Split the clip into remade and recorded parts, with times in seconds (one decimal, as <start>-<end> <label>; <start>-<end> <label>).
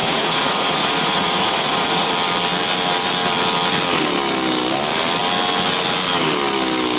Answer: 0.0-2.1 remade; 2.1-7.0 recorded